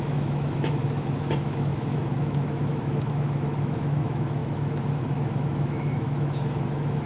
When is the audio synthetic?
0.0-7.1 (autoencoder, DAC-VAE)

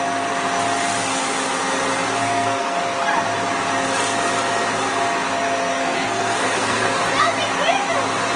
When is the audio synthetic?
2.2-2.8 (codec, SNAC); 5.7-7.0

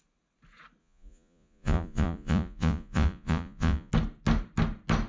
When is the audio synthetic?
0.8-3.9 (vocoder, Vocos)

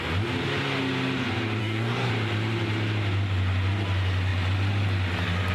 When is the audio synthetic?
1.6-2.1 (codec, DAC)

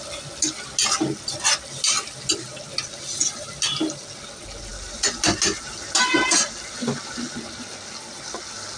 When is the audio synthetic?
none

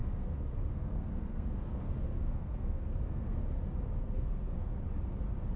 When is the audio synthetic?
0.0-3.4 (codec, SNAC); 4.0-4.7

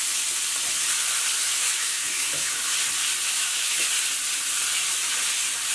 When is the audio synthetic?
1.4-2.6 (autoencoder, DAC-VAE); 3.4-3.9

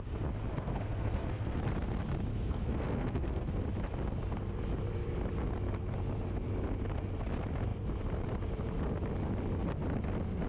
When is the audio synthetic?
0.5-1.6 (codec, SNAC); 2.3-3.6